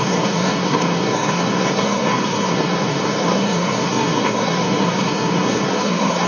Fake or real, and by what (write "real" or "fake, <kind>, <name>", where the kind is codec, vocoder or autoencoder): fake, codec, SNAC